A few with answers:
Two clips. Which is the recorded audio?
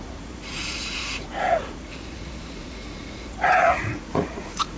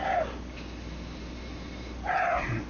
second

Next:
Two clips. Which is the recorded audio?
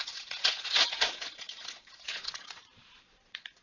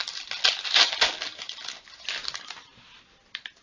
second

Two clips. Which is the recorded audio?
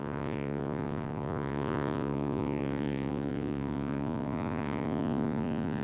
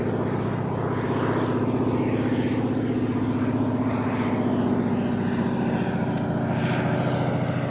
second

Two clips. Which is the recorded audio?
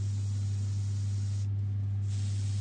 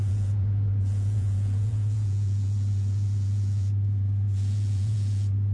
first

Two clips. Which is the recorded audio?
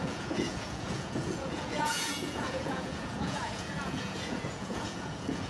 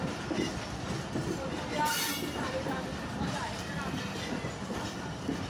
second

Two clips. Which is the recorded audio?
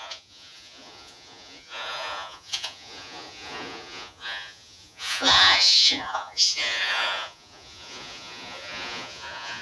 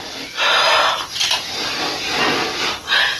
second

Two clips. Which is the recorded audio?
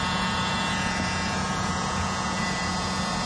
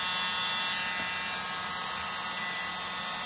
second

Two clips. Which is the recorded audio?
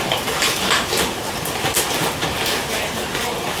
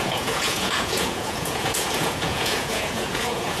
first